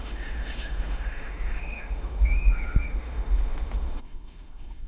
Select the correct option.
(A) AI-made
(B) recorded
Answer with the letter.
A